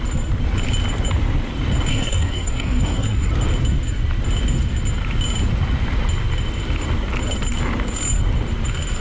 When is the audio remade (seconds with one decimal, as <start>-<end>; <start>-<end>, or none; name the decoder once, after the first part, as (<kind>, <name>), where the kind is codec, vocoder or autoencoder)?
1.9-3.3 (codec, SNAC)